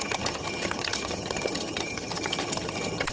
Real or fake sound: fake